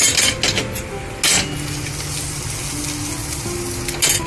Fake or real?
real